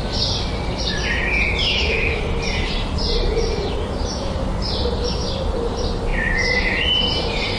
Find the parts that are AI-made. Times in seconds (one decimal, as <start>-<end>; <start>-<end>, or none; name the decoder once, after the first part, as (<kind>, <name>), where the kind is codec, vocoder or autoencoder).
1.6-2.2 (autoencoder, DAC-VAE)